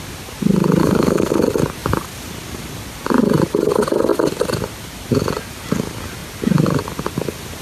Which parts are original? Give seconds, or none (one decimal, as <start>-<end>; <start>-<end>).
0.0-0.8; 1.4-7.6